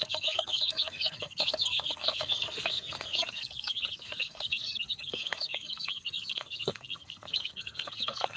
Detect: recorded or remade remade